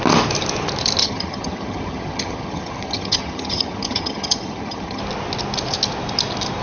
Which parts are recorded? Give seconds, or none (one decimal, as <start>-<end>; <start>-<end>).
0.0-1.0; 5.0-6.6